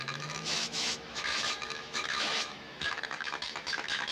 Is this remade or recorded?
remade